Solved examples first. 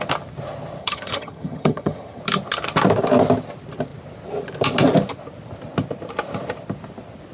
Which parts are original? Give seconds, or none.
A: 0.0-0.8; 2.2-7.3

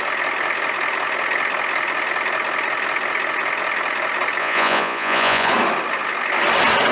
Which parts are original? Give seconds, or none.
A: 0.0-4.4; 5.5-6.9

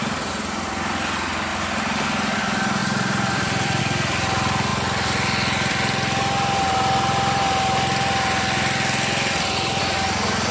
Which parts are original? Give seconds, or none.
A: 0.0-1.5; 2.4-2.8; 3.8-10.5

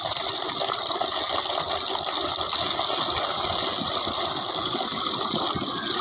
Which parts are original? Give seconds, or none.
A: 0.0-6.0

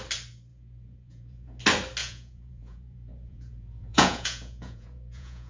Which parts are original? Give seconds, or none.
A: 0.0-0.5; 1.6-2.0

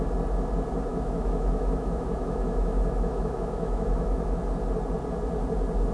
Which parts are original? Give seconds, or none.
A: 0.0-0.9; 4.4-5.9

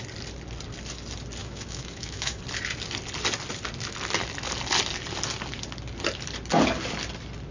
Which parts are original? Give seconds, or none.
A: 0.0-1.4; 2.4-7.5